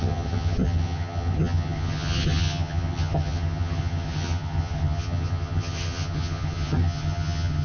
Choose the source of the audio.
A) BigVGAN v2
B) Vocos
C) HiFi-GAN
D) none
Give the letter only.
C